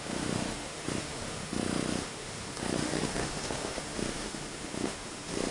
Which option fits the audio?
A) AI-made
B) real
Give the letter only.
A